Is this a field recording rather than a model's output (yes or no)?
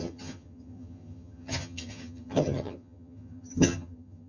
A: no